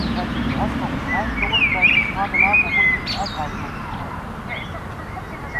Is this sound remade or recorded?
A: recorded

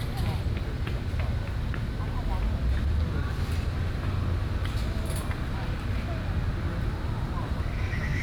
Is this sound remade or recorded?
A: recorded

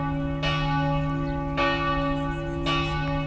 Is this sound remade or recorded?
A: recorded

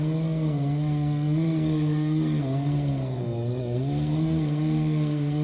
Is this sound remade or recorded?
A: remade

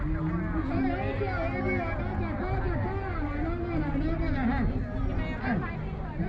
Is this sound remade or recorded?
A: recorded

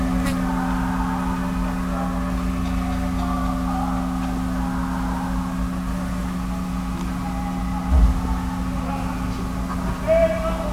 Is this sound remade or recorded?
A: recorded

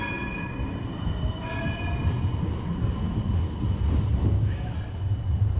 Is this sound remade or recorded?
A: recorded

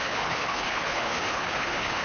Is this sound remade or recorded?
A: remade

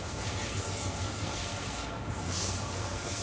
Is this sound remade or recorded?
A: remade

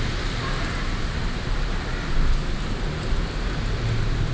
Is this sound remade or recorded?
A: recorded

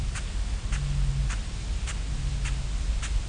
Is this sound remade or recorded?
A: recorded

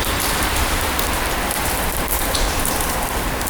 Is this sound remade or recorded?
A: remade